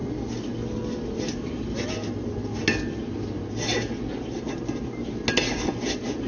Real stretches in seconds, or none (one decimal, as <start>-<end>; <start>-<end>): 0.0-6.3